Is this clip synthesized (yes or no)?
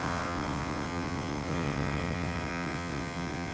yes